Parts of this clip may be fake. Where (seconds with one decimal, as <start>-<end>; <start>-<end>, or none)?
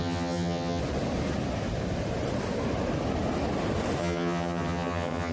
0.0-0.8; 4.0-5.3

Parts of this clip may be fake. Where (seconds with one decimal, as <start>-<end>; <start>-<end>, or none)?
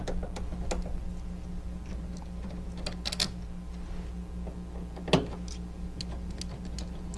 none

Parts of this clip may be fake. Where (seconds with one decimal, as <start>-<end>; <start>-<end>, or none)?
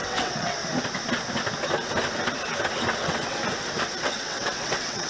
0.0-0.6; 3.0-3.4; 4.0-5.1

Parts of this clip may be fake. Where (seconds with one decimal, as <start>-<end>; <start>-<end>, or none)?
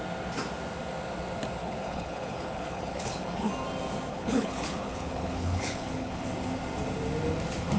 1.6-3.5; 4.1-6.2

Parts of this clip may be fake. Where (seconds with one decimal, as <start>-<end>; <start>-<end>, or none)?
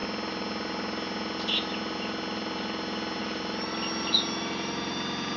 3.2-5.4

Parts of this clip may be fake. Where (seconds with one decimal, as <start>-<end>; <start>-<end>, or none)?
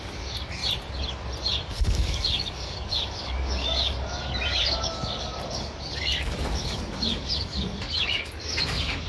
0.0-0.6; 1.8-9.1